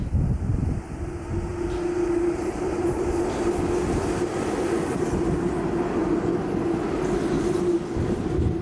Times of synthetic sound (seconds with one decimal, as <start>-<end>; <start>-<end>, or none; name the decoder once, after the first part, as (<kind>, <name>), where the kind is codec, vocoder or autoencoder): 1.5-3.5 (vocoder, BigVGAN v2)